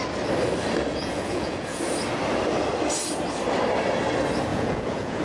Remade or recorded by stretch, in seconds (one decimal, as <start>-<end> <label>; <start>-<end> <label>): 0.0-0.9 recorded; 0.9-1.8 remade; 1.8-4.5 recorded; 4.5-5.2 remade